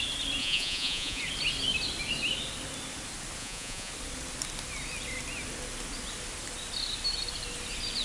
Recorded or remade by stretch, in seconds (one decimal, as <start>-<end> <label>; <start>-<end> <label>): 0.0-0.4 recorded; 0.4-1.2 remade; 1.2-3.4 recorded; 3.4-3.9 remade; 3.9-8.0 recorded